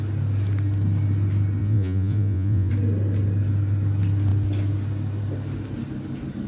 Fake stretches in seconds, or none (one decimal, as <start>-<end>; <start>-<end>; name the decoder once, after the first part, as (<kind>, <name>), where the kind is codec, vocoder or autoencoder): 1.6-2.7 (vocoder, Vocos)